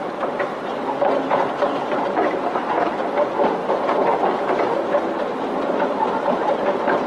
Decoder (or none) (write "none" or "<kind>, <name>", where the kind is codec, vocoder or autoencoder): none